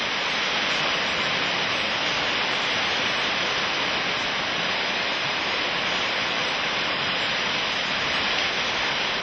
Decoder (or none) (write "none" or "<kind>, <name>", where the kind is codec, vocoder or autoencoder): none